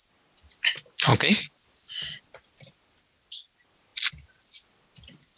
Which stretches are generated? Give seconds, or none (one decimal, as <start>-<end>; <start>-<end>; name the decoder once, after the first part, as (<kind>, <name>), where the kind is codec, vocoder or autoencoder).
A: none